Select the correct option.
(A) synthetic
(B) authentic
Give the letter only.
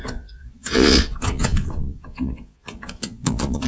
A